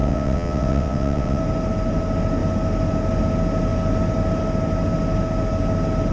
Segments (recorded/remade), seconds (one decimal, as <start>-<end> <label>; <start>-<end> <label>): 0.0-1.4 remade; 1.4-6.1 recorded